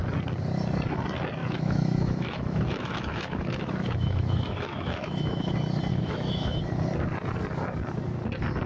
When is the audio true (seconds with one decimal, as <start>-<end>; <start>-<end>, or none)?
0.0-1.4; 5.4-5.9; 6.6-8.7